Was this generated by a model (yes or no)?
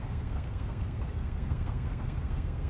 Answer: yes